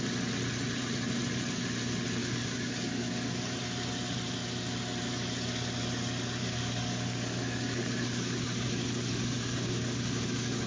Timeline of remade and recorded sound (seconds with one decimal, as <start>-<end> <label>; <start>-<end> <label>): 0.0-2.2 recorded; 2.2-3.4 remade; 3.4-6.4 recorded; 6.4-10.7 remade